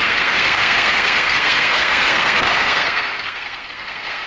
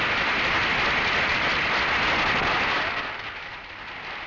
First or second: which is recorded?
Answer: second